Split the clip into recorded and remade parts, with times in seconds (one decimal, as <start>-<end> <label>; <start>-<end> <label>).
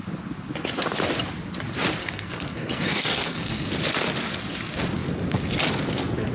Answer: 0.0-2.0 recorded; 2.0-3.7 remade; 3.7-6.3 recorded